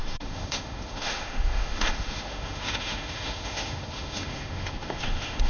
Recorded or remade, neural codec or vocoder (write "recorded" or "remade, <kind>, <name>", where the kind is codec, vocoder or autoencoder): remade, autoencoder, DAC-VAE